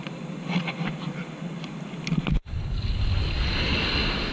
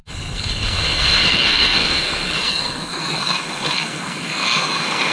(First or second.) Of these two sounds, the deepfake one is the second